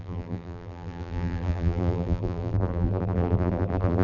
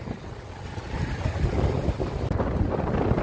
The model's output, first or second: first